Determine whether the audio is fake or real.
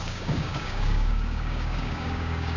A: fake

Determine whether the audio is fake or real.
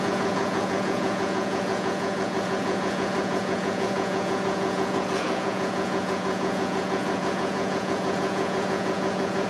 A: fake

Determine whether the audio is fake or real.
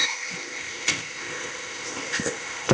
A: fake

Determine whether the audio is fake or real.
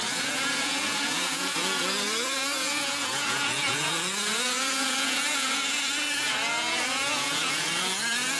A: fake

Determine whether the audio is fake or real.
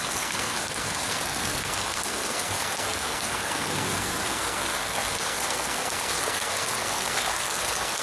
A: fake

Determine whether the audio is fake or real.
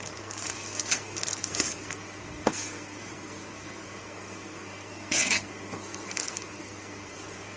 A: fake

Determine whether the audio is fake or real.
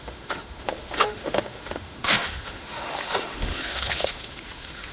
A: fake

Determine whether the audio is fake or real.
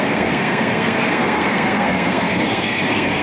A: fake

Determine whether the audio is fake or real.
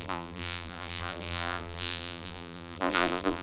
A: fake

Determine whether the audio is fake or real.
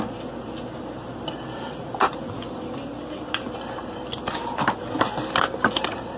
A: real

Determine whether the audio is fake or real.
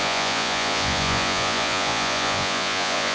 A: fake